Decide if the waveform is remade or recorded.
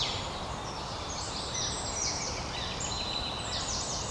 recorded